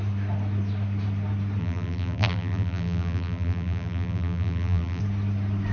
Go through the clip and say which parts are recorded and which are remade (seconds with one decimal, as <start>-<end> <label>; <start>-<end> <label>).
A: 0.0-1.6 recorded; 1.6-5.0 remade; 5.0-5.7 recorded